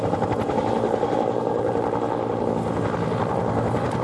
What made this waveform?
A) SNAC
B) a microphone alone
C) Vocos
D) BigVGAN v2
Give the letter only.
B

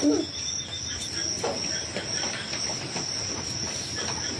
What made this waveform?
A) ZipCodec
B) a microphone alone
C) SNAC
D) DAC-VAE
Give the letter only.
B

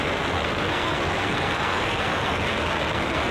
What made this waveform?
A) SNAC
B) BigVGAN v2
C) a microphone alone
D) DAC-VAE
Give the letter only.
A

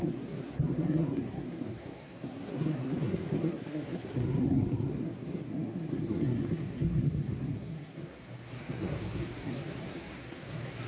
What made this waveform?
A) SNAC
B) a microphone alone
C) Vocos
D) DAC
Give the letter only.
A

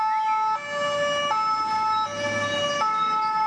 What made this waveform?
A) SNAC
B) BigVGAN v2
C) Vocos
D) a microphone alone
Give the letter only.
D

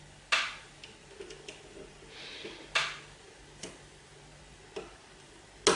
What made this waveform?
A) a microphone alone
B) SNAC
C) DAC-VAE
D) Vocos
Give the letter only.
A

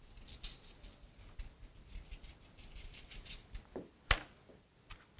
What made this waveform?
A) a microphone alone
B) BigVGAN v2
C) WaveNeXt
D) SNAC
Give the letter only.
A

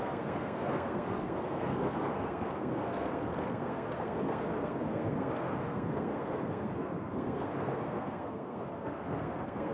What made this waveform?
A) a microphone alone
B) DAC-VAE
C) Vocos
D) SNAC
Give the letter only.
D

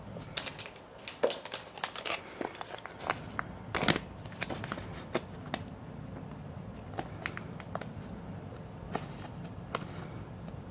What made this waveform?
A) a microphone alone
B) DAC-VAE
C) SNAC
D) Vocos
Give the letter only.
A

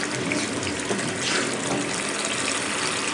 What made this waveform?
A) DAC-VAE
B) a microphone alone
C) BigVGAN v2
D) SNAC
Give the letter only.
B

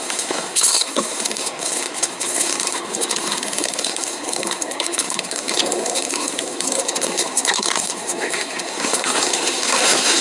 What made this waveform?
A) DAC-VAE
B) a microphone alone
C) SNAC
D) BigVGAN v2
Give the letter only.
C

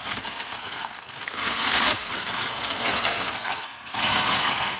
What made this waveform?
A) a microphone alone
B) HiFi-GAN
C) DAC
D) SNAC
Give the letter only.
D